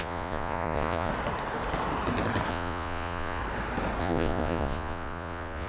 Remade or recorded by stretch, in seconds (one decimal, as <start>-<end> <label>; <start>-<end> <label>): 0.0-1.1 remade; 1.1-2.5 recorded; 2.5-3.4 remade; 3.4-4.0 recorded; 4.0-5.7 remade